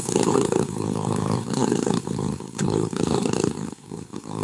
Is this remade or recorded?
remade